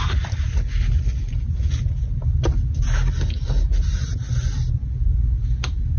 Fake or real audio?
real